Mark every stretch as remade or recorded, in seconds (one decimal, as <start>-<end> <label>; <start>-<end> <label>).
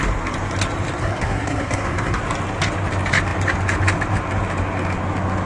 0.0-1.0 recorded; 1.0-2.2 remade; 2.2-5.5 recorded